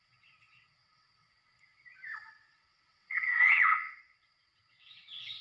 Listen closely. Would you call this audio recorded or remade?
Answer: remade